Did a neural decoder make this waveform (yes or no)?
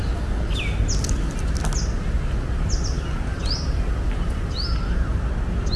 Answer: no